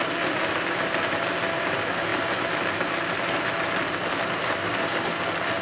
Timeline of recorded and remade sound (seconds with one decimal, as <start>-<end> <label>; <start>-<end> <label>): 0.0-5.6 recorded